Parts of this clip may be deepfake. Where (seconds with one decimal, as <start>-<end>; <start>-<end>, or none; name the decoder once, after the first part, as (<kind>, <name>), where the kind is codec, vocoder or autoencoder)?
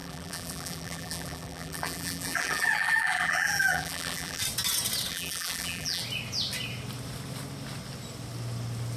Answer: 0.0-4.4 (vocoder, BigVGAN v2); 5.1-6.0